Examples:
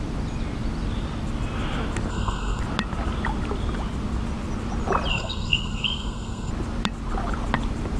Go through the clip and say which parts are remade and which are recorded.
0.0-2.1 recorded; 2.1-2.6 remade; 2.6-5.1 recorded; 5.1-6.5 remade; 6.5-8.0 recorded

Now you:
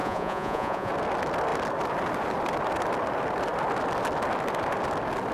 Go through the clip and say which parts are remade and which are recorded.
0.0-0.9 remade; 0.9-5.3 recorded

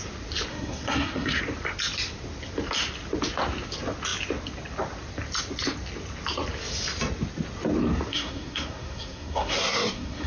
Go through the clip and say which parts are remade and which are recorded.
0.0-0.5 recorded; 0.5-1.4 remade; 1.4-8.1 recorded; 8.1-10.3 remade

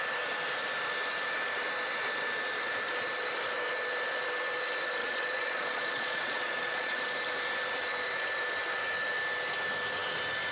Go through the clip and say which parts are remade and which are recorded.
0.0-5.0 recorded; 5.0-7.0 remade; 7.0-10.5 recorded

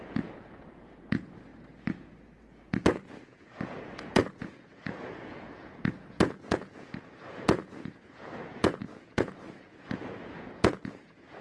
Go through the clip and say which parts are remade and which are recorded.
0.0-1.5 remade; 1.5-2.5 recorded; 2.5-11.4 remade

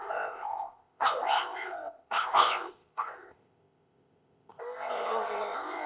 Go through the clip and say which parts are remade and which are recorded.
0.0-5.9 remade

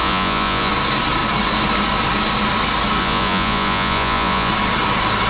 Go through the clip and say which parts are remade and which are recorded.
0.0-0.7 remade; 0.7-3.0 recorded; 3.0-4.5 remade; 4.5-5.3 recorded